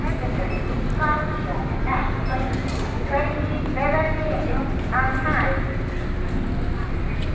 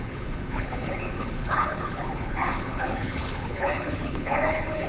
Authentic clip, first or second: first